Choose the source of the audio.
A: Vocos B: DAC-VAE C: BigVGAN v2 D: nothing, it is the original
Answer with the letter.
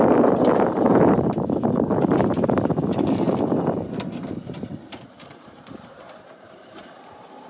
C